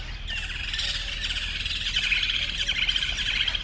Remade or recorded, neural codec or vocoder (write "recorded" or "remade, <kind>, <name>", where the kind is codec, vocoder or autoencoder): recorded